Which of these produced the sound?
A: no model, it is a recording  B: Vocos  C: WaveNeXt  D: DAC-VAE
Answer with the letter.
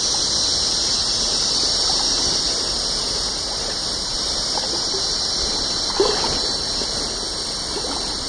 A